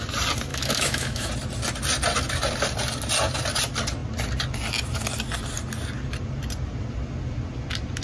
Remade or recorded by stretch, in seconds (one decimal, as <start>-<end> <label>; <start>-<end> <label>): 0.0-0.5 recorded; 0.5-1.3 remade; 1.3-8.0 recorded